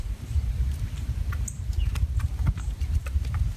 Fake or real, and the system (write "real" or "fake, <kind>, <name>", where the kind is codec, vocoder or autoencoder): fake, vocoder, BigVGAN v2